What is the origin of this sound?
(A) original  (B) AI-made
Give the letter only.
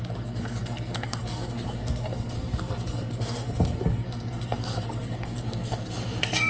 B